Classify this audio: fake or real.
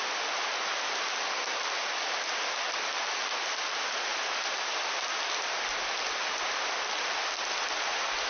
real